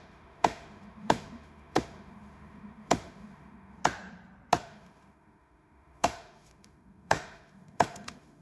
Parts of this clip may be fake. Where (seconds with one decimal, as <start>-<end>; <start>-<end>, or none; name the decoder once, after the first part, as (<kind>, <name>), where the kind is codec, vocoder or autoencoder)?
0.0-3.8 (autoencoder, DAC-VAE); 4.6-8.4